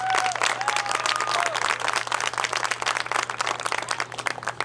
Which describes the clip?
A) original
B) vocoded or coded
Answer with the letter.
A